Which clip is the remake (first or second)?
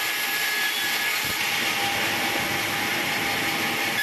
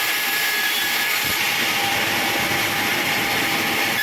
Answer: second